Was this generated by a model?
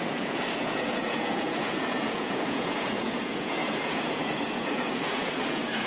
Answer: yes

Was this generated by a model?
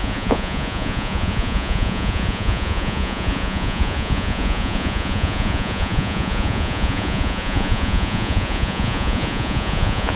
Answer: yes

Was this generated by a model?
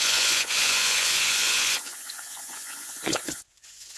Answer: yes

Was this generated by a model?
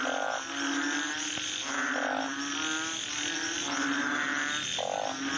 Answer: no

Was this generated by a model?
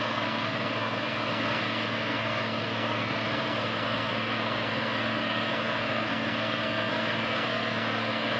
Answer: yes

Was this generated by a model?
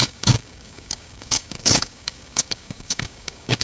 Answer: yes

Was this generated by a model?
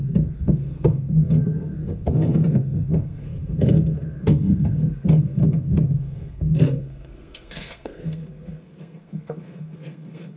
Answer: yes